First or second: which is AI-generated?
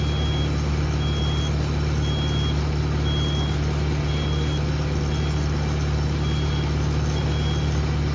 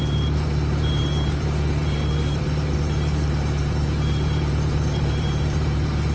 second